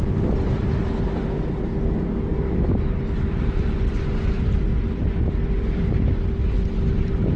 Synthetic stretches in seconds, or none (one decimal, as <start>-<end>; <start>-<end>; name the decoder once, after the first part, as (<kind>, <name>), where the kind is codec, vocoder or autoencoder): 2.3-4.0 (vocoder, BigVGAN v2); 4.7-5.4